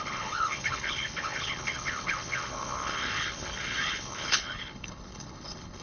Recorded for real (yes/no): no